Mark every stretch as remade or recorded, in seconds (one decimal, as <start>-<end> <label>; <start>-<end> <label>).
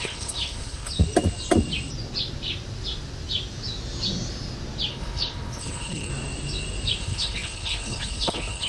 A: 0.0-0.9 remade; 0.9-4.9 recorded; 4.9-6.1 remade; 6.1-7.0 recorded; 7.0-8.7 remade